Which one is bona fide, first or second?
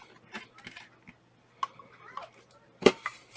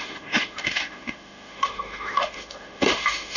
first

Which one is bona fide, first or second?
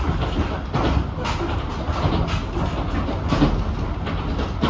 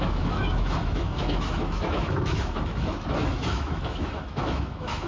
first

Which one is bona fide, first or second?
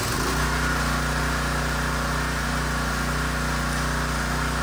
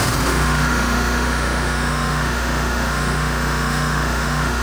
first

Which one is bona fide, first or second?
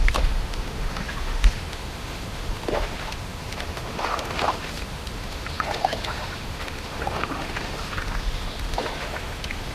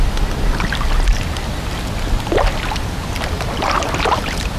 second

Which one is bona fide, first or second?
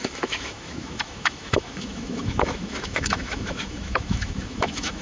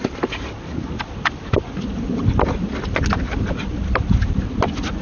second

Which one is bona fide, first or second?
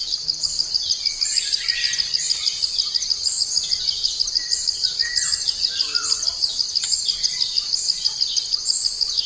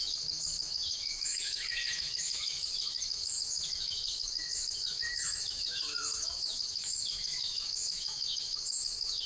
first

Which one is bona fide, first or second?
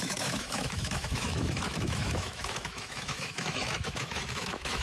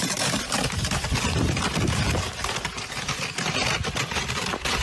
second